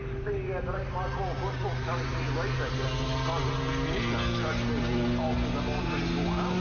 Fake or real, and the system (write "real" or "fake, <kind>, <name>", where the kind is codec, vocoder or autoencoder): real